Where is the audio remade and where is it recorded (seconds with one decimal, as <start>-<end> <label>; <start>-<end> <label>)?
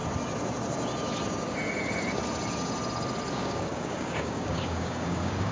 0.0-3.3 recorded; 3.3-5.5 remade